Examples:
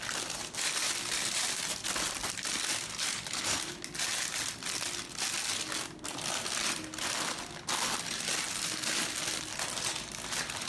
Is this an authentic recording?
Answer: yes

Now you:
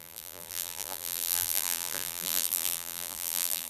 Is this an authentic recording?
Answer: no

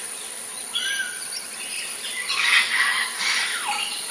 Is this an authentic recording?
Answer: yes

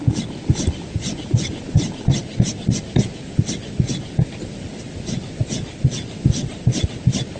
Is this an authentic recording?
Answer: yes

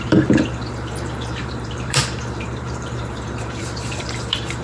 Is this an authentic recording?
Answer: no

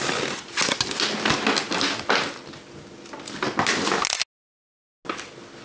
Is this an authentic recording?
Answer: yes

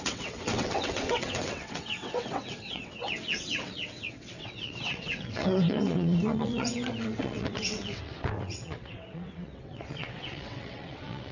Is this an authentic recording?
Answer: no